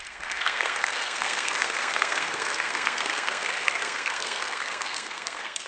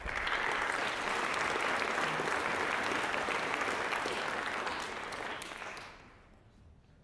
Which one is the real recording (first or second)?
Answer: second